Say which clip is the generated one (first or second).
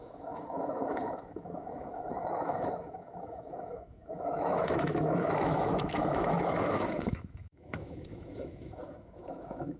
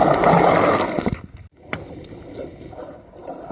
first